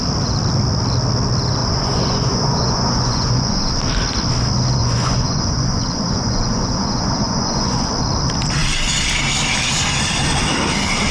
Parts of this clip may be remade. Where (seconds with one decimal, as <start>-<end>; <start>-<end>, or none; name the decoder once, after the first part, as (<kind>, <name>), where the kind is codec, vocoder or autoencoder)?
1.6-3.7 (vocoder, Vocos); 4.8-7.9